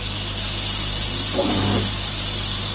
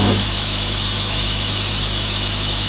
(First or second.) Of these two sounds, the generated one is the second